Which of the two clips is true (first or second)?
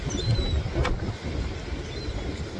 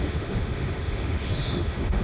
first